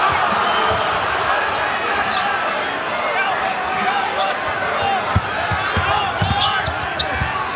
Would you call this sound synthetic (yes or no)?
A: no